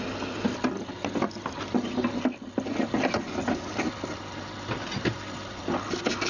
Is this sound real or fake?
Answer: real